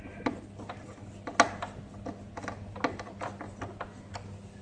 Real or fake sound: real